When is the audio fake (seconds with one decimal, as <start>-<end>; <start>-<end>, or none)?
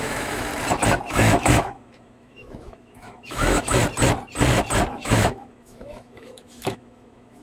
0.0-0.5; 1.1-3.8; 4.9-7.4